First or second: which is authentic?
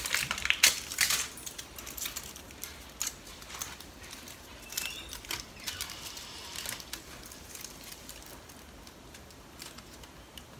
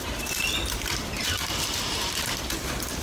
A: first